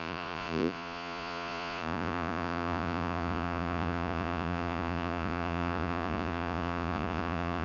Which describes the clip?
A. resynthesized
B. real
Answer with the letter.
A